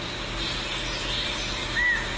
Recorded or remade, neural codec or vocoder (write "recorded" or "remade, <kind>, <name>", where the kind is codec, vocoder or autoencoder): recorded